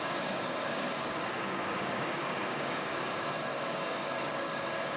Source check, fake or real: fake